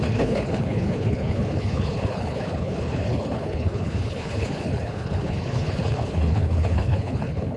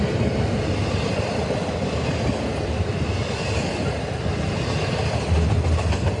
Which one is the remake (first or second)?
first